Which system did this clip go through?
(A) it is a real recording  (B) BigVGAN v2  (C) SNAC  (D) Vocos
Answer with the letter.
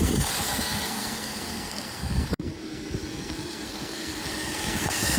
C